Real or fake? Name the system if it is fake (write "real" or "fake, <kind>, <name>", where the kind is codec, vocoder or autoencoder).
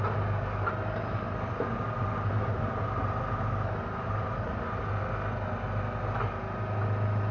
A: real